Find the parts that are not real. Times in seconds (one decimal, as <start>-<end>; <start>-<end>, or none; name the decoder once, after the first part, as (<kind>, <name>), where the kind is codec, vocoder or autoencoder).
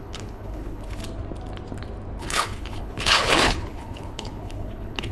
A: 0.0-1.0 (codec, HILCodec); 2.2-5.1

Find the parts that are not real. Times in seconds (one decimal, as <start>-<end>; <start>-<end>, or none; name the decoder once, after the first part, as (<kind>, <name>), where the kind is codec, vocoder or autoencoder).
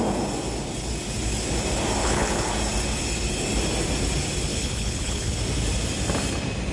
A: 2.0-2.5 (codec, HILCodec); 4.5-5.4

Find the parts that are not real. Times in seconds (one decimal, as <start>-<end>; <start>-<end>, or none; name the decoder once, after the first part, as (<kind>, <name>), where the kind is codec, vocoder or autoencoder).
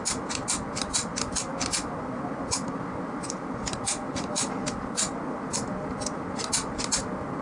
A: none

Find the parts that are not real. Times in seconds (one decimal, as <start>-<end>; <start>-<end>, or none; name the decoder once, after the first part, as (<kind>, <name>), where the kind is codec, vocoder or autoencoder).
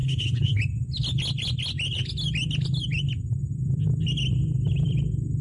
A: 0.0-0.6 (codec, HILCodec)